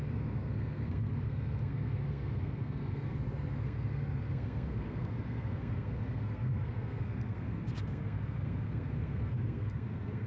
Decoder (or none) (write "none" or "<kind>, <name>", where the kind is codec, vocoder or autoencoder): codec, SNAC